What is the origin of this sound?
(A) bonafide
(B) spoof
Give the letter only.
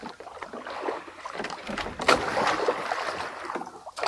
A